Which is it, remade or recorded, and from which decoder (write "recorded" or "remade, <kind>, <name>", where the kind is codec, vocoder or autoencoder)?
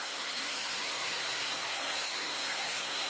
remade, codec, SNAC